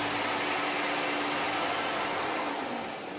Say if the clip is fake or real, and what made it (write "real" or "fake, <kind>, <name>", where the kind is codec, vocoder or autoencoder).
real